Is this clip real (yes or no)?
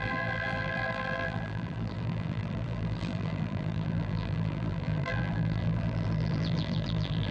no